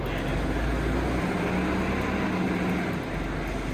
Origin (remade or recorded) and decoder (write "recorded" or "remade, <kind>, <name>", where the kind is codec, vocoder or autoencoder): recorded